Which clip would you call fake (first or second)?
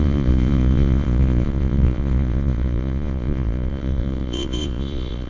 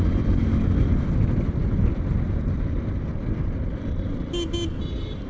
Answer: first